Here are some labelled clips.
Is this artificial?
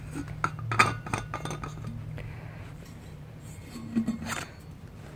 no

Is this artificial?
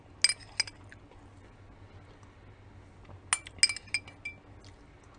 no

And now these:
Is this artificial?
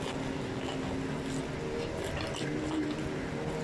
no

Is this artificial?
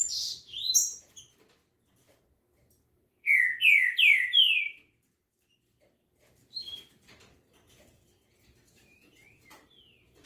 yes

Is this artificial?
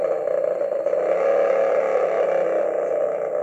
no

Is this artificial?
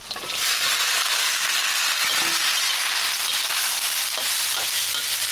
no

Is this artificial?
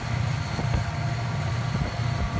no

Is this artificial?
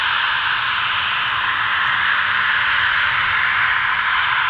yes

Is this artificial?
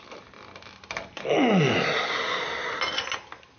no